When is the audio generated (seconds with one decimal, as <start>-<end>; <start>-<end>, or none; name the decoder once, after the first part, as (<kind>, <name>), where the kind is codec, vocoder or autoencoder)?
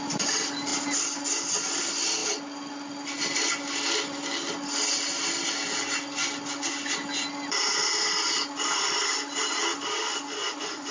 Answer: 10.4-10.9 (vocoder, Vocos)